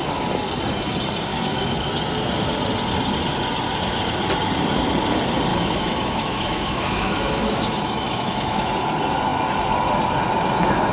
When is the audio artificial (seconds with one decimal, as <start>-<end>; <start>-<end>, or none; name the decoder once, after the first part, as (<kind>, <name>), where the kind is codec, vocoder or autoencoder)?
1.3-1.9 (autoencoder, DAC-VAE); 5.5-8.7